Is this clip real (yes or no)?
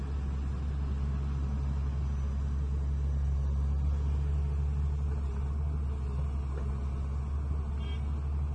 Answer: yes